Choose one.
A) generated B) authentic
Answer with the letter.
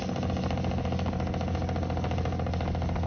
B